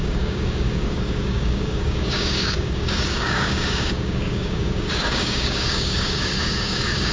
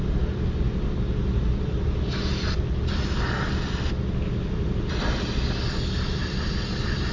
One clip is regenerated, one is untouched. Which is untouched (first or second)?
second